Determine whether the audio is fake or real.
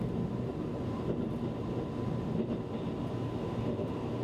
real